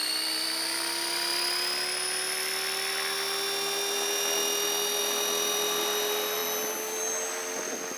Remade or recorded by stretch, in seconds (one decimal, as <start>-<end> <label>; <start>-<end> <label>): 0.0-1.3 remade; 1.3-5.0 recorded; 5.0-6.4 remade; 6.4-7.3 recorded; 7.3-8.0 remade